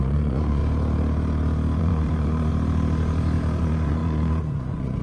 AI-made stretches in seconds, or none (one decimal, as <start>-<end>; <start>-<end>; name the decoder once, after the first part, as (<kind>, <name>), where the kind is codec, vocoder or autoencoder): 0.0-0.6 (vocoder, Vocos); 1.8-2.5; 3.6-5.0